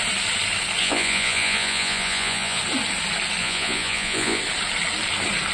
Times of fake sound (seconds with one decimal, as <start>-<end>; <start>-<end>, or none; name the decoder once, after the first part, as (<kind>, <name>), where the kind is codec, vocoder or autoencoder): 0.8-2.6 (vocoder, Vocos); 3.4-4.4